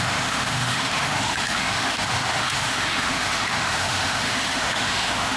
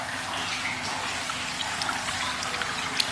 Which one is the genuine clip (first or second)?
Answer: second